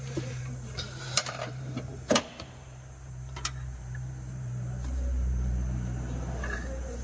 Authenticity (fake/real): fake